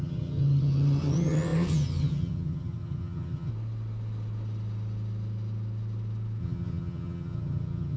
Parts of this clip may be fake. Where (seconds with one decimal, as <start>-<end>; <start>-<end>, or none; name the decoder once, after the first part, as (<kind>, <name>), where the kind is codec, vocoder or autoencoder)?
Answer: 0.0-3.5 (vocoder, HiFi-GAN); 6.4-8.0